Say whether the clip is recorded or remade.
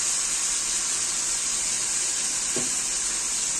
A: recorded